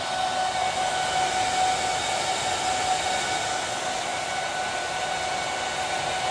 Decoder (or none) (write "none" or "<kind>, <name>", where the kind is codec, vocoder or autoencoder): none